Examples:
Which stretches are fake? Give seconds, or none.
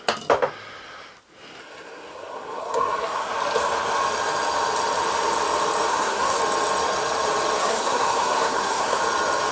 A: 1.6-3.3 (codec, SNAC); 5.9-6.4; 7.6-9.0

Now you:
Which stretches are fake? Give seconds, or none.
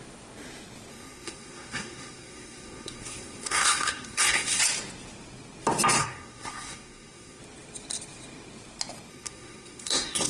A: 0.9-4.6 (codec, SNAC); 6.0-7.4; 9.1-10.3